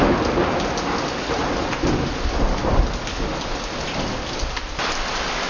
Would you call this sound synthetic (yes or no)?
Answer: no